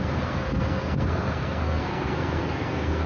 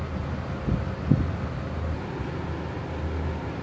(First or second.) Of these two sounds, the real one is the second